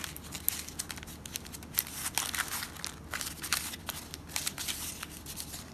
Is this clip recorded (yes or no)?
yes